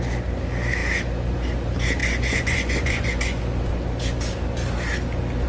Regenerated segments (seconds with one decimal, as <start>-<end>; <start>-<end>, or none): 2.0-3.4